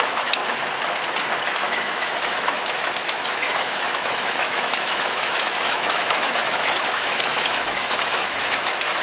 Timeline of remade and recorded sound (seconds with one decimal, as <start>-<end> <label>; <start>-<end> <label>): 0.0-0.4 remade; 0.4-1.4 recorded; 1.4-9.0 remade